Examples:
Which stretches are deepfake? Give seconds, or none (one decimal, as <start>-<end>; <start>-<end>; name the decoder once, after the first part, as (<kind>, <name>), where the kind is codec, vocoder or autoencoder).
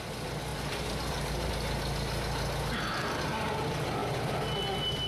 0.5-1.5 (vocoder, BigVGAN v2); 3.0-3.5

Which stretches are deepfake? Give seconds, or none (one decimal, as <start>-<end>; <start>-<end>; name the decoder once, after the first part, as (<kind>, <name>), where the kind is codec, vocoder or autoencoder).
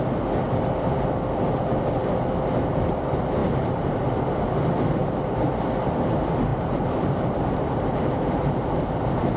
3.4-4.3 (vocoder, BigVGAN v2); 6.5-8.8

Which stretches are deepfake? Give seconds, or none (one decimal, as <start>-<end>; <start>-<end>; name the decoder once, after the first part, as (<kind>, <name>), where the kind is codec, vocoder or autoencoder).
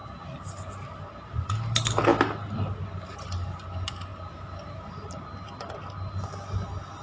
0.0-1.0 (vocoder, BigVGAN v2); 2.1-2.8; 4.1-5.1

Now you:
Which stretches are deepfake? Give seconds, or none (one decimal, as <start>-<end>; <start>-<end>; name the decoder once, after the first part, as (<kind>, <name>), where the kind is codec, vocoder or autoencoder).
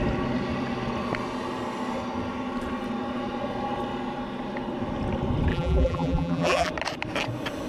5.5-6.7 (vocoder, BigVGAN v2)